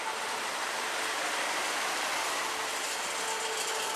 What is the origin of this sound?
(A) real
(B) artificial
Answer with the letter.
A